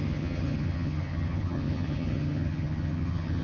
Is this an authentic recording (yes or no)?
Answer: no